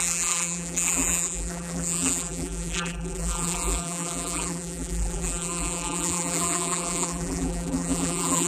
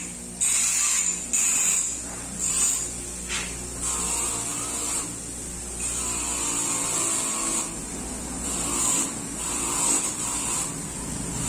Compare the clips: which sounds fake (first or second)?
first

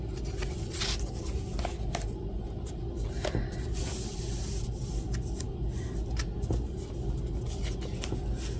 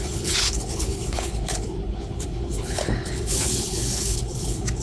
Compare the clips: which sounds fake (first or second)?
second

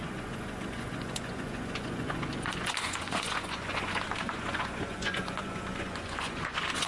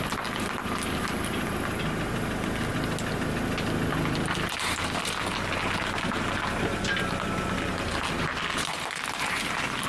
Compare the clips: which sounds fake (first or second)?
first